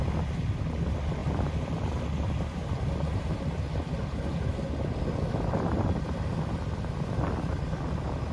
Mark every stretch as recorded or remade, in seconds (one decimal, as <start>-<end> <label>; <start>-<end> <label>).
0.0-8.3 recorded